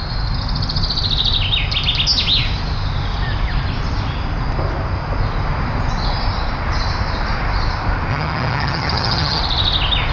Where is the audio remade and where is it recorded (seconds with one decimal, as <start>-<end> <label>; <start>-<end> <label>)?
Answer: 0.0-8.1 recorded; 8.1-9.4 remade; 9.4-10.1 recorded